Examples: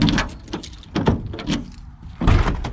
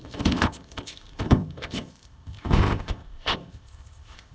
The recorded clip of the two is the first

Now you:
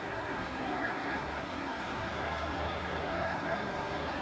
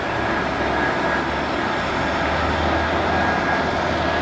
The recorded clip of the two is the second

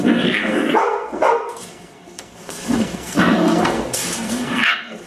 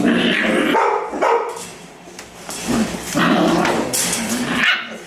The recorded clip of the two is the second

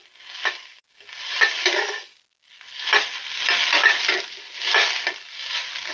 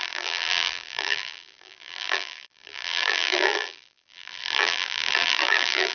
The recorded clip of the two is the first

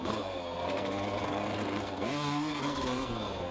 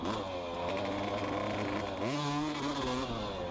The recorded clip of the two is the second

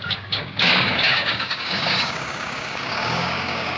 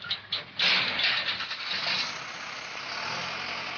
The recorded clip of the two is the second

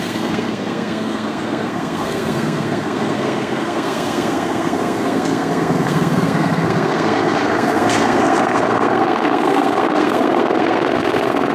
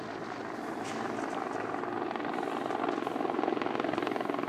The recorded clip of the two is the second